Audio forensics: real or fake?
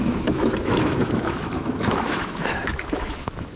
fake